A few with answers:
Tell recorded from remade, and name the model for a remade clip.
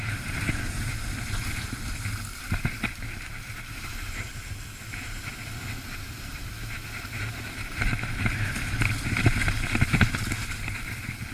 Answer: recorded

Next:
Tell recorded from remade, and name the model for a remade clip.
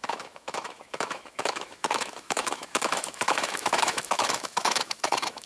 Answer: remade, autoencoder, DAC-VAE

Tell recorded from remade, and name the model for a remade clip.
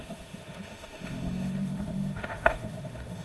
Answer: remade, autoencoder, DAC-VAE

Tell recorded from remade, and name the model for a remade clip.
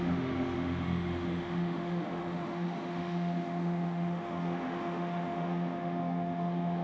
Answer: remade, autoencoder, DAC-VAE